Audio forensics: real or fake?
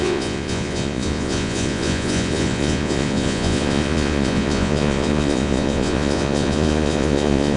fake